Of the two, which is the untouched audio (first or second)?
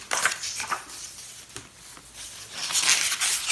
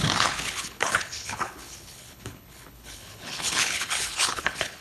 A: first